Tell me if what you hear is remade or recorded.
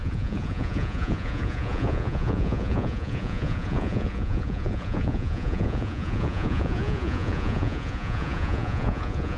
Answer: remade